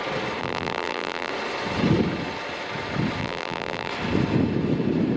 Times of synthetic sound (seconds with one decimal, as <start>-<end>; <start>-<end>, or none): 0.4-1.3; 3.2-3.9